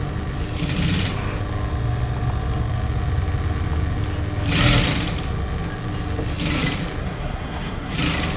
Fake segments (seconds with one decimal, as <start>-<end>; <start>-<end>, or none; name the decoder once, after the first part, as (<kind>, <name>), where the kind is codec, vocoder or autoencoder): 7.0-7.9 (codec, SNAC)